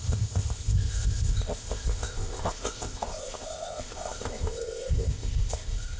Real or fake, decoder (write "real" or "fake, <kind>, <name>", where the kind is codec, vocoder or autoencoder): fake, codec, ZipCodec